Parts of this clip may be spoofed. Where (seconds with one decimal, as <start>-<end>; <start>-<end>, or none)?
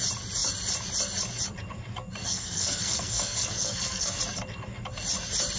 2.2-4.2